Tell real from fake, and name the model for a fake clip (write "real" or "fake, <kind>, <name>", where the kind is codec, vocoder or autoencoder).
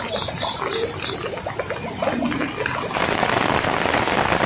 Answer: real